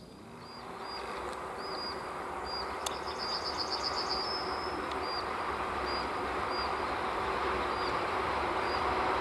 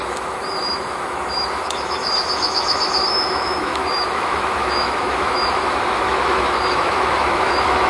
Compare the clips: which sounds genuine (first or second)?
first